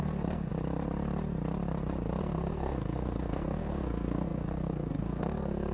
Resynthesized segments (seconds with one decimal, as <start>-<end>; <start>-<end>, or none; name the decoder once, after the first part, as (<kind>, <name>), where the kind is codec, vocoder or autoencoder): 0.0-0.5 (codec, SNAC); 2.2-5.7